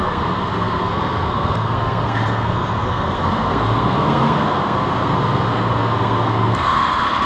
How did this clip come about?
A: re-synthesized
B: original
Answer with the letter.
A